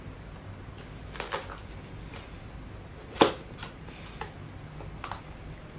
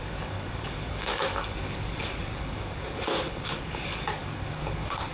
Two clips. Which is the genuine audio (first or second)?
first